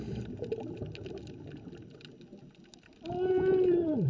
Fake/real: real